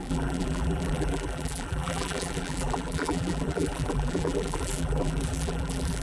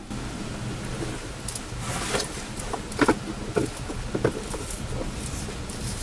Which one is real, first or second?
second